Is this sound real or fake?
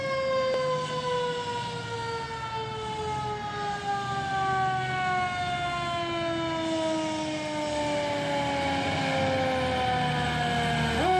real